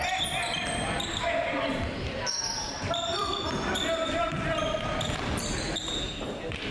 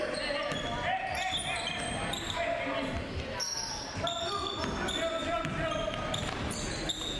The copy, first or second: first